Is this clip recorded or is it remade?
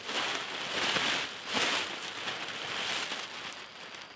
recorded